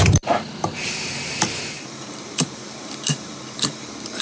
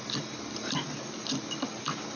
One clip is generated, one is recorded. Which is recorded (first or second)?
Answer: second